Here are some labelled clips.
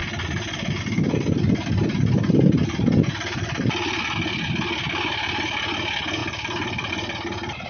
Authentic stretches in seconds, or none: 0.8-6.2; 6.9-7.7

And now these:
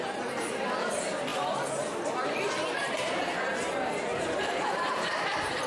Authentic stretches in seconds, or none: 0.0-2.6; 3.5-4.1

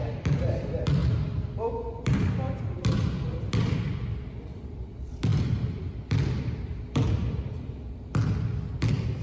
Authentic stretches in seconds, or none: 0.0-9.2

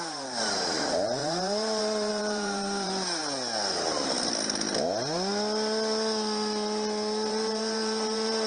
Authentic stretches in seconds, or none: 3.2-7.3

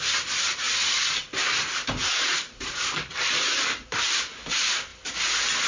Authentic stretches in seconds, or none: 0.0-1.4; 3.3-5.7

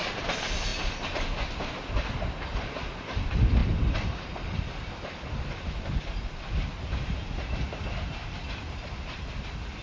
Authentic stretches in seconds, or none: 0.0-3.6; 6.0-9.8

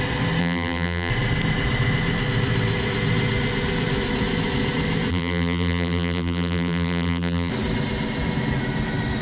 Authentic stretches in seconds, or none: 0.0-0.4; 1.1-5.1; 7.5-9.2

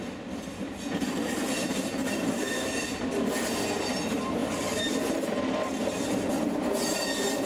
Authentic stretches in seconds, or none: 0.0-2.0; 2.7-4.4; 5.4-7.5